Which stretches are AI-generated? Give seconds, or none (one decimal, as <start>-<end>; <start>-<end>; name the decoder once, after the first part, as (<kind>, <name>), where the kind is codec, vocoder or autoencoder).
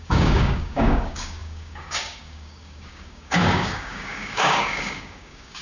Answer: 0.0-5.6 (codec, DAC)